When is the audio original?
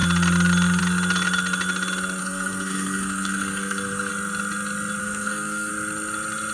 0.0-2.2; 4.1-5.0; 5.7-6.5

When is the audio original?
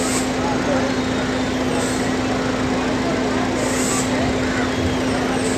0.0-5.6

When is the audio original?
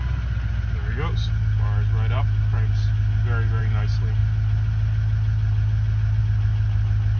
0.0-7.2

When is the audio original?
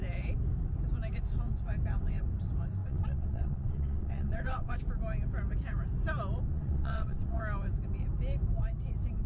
0.0-2.8; 4.8-6.5; 7.4-9.3